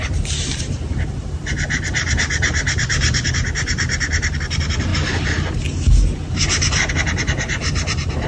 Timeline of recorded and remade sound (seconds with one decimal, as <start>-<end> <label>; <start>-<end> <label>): 0.0-4.9 remade; 4.9-6.9 recorded; 6.9-8.3 remade